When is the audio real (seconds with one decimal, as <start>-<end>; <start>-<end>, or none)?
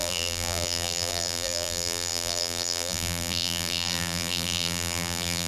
none